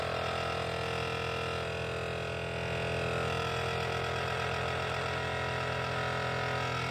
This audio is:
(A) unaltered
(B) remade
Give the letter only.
A